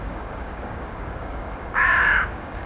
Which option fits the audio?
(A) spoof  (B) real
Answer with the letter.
A